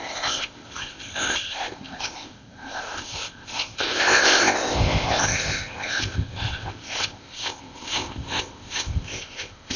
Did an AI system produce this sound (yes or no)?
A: yes